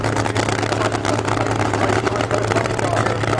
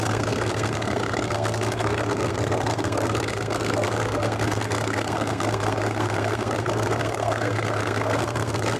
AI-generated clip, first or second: second